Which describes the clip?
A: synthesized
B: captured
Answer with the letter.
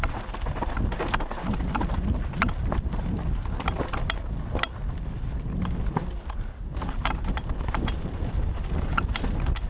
B